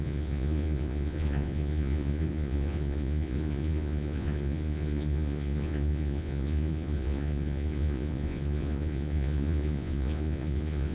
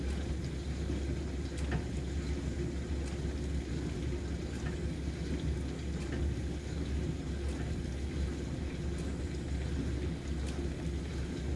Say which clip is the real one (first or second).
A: second